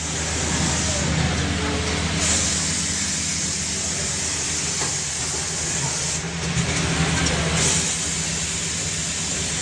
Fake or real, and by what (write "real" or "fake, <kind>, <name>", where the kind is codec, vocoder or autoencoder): real